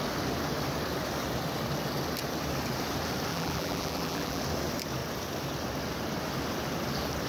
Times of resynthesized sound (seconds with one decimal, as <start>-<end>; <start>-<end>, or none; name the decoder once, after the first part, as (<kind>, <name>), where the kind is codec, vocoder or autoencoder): 3.3-4.4 (vocoder, BigVGAN v2)